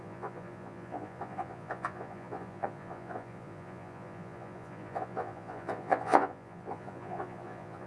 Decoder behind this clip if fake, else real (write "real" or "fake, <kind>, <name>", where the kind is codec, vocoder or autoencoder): fake, vocoder, Vocos